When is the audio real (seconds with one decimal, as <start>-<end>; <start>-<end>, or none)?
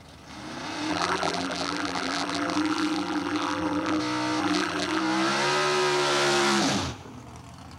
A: 0.0-0.9; 4.0-4.4; 5.0-7.8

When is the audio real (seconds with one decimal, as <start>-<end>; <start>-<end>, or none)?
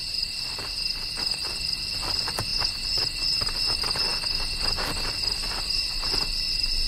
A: none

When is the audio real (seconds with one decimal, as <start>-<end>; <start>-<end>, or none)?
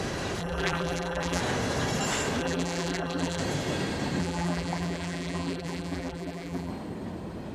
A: 0.0-0.4; 1.4-2.4; 3.4-4.2; 6.7-7.5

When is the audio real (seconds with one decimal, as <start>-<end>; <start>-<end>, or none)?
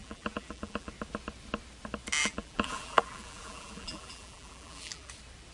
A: 0.9-2.2; 5.1-5.5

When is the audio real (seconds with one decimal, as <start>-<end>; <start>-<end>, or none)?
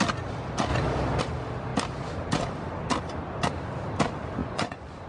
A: 0.0-4.4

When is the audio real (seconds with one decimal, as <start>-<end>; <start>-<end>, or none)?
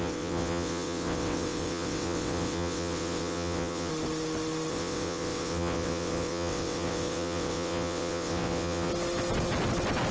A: 3.9-4.7; 8.9-10.1